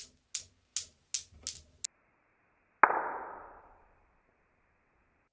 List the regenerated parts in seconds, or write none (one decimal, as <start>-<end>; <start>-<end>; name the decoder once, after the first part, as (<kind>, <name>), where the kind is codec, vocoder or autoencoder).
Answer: none